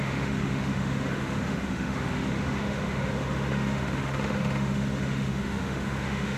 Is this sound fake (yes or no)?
yes